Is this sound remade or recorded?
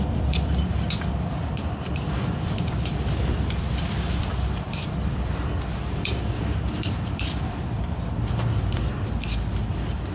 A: remade